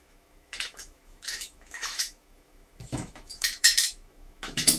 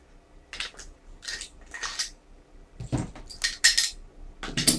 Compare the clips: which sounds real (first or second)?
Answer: second